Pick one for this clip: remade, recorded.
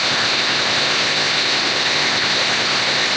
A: remade